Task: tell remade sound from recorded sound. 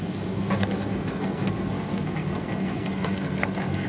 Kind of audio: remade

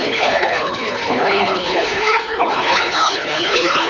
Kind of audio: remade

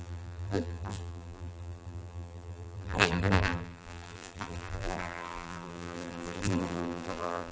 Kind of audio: remade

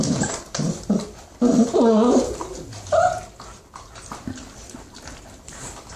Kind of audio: recorded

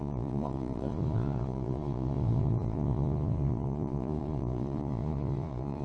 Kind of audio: remade